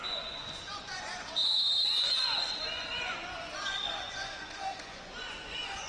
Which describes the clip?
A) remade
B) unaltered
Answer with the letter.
A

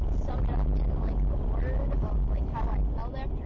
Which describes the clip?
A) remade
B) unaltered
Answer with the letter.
B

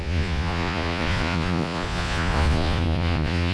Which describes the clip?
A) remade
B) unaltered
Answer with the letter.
A